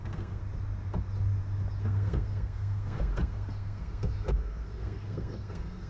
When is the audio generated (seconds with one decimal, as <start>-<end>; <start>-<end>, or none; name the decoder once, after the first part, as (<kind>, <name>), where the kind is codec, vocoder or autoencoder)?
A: 0.0-0.4 (codec, SNAC); 1.8-5.9